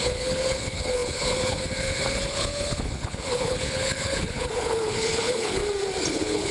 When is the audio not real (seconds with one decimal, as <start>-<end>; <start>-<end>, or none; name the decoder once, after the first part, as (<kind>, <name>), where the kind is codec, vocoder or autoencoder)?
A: 0.0-5.6 (codec, HILCodec); 6.1-6.5